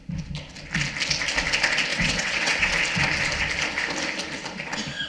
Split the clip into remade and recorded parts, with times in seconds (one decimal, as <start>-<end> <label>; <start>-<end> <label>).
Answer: 0.0-1.9 recorded; 1.9-2.7 remade; 2.7-5.1 recorded